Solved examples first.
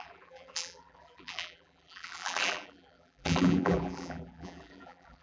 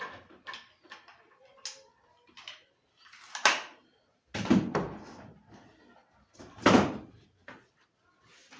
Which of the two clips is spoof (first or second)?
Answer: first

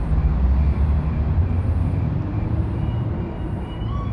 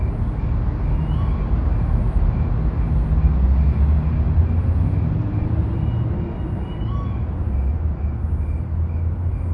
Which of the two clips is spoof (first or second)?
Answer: first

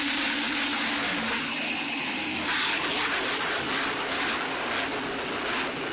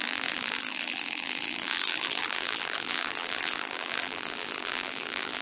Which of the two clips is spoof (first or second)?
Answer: second